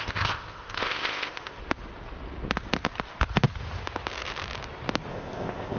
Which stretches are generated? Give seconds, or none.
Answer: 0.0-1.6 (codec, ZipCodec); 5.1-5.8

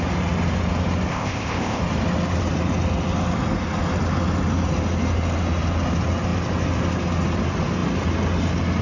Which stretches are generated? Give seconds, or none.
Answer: 1.1-1.8 (codec, ZipCodec)